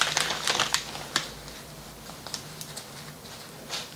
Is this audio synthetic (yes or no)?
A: yes